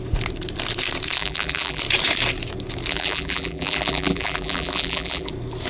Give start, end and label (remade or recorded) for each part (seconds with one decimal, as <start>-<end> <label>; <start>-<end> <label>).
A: 0.0-1.2 recorded; 1.2-1.8 remade; 1.8-2.9 recorded; 2.9-5.3 remade; 5.3-5.7 recorded

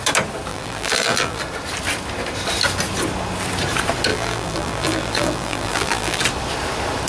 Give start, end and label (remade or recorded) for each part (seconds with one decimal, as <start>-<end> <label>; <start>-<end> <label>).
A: 0.0-0.5 recorded; 0.5-1.4 remade; 1.4-4.1 recorded; 4.1-6.2 remade; 6.2-7.1 recorded